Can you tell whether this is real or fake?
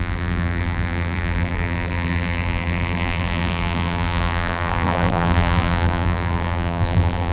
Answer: fake